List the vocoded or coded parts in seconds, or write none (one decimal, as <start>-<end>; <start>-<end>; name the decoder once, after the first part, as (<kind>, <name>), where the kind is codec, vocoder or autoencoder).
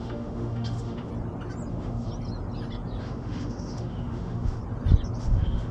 0.0-1.1 (autoencoder, DAC-VAE); 1.7-2.1; 3.0-4.6; 5.2-5.7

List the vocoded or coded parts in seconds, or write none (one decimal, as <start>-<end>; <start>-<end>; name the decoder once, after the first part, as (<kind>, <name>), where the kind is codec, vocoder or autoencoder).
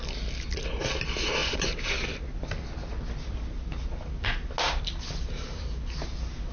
none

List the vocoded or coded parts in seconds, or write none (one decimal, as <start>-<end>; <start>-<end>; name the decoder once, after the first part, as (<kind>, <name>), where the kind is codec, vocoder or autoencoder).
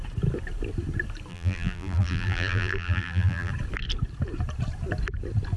1.3-3.5 (vocoder, BigVGAN v2)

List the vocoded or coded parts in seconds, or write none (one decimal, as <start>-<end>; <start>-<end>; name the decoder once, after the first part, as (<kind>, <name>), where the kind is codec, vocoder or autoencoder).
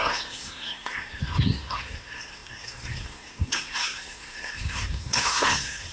0.0-5.9 (codec, SNAC)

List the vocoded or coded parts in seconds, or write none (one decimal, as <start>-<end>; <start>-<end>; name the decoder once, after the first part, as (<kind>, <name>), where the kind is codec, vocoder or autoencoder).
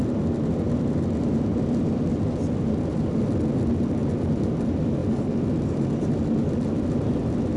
none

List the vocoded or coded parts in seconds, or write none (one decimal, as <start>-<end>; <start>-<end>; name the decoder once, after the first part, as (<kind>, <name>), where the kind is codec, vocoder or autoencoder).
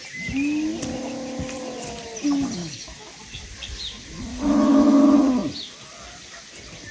2.6-3.2 (autoencoder, DAC-VAE); 4.3-5.0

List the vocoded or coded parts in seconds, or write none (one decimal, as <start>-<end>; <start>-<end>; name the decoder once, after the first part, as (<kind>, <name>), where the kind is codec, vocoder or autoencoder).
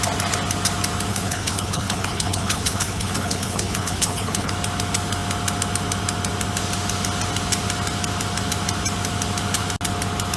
1.1-4.5 (codec, HILCodec)